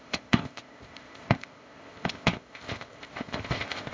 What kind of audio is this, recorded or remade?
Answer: remade